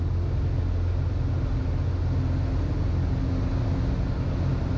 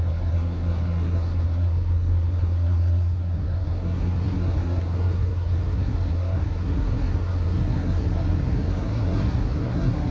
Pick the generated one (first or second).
second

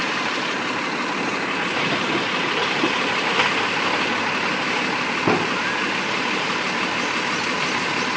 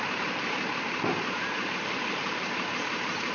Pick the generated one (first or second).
second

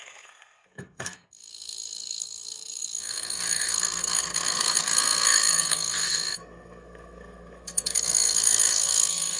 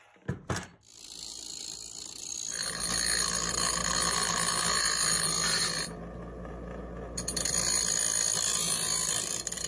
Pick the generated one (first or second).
first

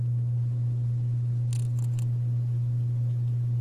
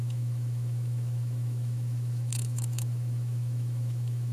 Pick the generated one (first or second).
second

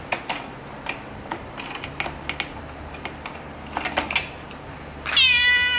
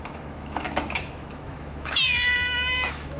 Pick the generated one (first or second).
second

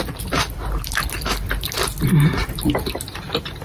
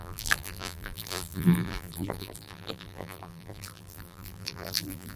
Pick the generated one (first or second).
second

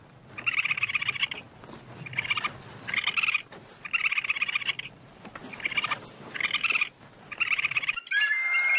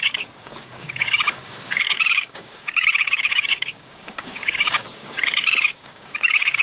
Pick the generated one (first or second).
second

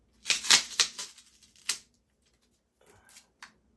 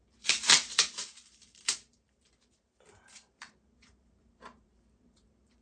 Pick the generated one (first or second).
second